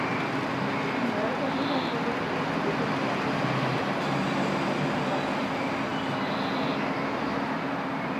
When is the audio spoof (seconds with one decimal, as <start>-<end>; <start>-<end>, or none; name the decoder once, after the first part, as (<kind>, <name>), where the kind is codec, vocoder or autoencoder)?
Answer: none